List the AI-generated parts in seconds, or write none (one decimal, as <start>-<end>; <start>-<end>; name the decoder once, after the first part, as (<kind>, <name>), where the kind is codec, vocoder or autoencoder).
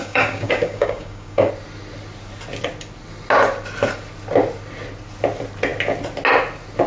0.0-1.5 (codec, DAC)